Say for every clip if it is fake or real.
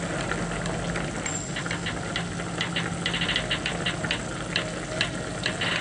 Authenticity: real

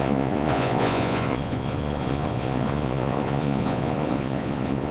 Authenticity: fake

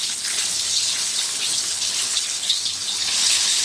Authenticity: fake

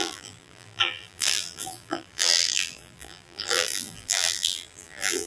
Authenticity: fake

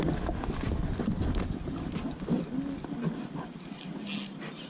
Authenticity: real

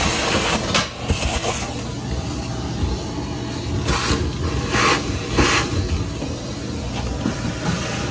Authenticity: real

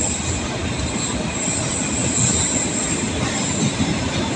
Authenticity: real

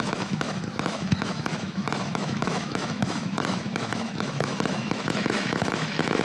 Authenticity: fake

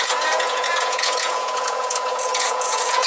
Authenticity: fake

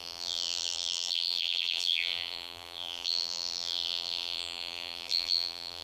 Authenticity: fake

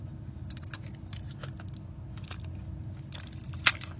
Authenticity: real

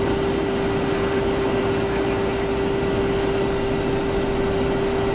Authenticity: real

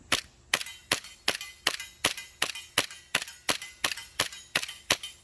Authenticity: real